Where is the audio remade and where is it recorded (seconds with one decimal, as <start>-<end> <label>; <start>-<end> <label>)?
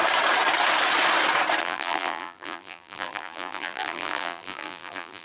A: 0.0-1.6 recorded; 1.6-5.2 remade